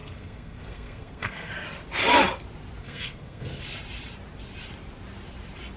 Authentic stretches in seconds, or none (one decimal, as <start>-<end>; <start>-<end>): 1.5-2.8; 3.6-5.8